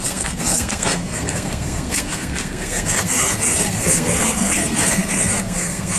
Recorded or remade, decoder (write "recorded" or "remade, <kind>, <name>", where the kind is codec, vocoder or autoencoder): remade, codec, SNAC